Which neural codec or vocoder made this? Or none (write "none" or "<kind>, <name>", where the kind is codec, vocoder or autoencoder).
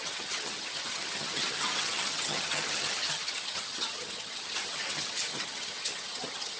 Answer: vocoder, HiFi-GAN